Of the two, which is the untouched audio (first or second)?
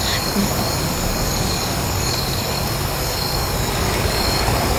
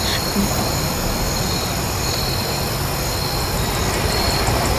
second